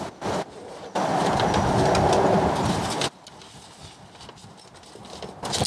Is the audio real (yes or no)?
yes